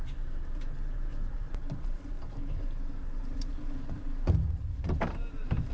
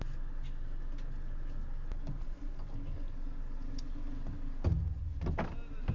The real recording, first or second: second